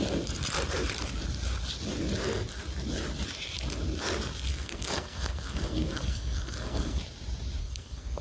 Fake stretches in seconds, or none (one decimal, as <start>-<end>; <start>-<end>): 4.5-7.0; 7.6-8.2